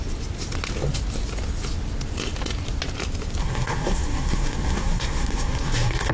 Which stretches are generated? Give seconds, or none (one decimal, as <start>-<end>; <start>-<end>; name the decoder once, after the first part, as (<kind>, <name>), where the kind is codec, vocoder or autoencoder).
3.4-6.1 (codec, SNAC)

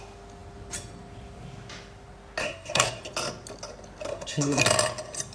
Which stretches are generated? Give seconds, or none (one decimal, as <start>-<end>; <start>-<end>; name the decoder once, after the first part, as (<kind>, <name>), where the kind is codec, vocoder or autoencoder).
2.4-3.0 (codec, SNAC); 4.1-4.6